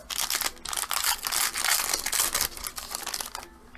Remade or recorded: recorded